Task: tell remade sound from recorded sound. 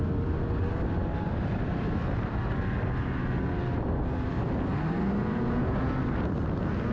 recorded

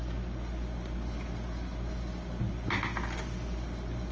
recorded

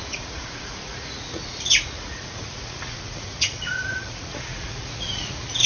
remade